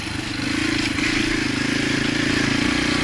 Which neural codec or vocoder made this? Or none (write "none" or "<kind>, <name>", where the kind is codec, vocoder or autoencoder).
none